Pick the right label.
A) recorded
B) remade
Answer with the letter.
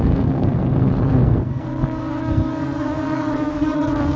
B